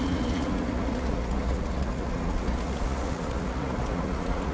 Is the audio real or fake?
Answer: fake